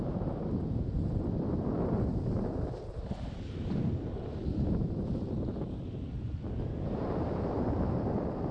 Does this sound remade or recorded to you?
recorded